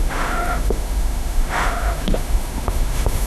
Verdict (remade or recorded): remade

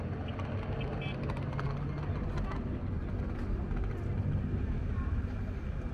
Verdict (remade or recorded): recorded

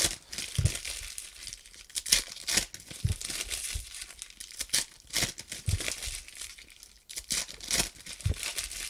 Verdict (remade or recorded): recorded